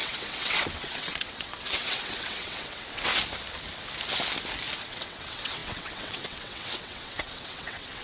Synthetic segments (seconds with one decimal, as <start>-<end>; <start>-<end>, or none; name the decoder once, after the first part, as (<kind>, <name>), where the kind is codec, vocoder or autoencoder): 0.0-3.1 (vocoder, WaveNeXt); 4.8-8.0